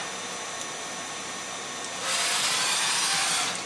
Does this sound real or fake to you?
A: real